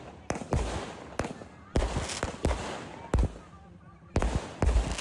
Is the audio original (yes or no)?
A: yes